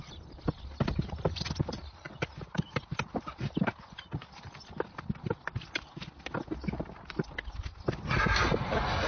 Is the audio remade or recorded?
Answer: recorded